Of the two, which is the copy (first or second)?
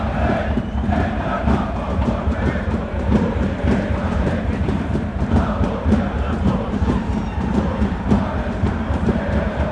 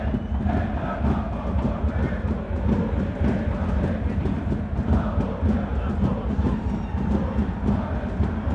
first